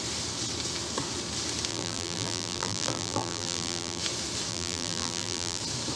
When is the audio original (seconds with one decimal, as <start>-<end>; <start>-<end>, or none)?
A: 0.0-1.7; 4.0-4.5; 5.6-6.0